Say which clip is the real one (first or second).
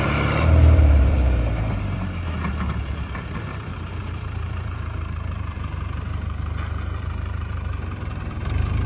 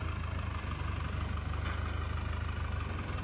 second